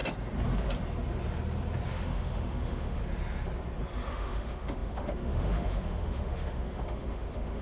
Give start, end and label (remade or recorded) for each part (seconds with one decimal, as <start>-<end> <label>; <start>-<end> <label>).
0.0-1.9 recorded; 1.9-3.0 remade; 3.0-4.1 recorded; 4.1-7.6 remade